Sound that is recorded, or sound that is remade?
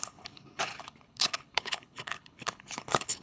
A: remade